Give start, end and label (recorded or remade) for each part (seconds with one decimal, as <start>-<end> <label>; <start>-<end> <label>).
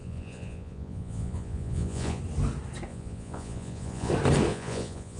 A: 0.0-2.2 remade; 2.2-2.9 recorded; 2.9-4.1 remade; 4.1-4.5 recorded; 4.5-5.2 remade